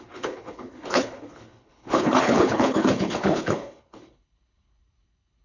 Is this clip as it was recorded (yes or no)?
no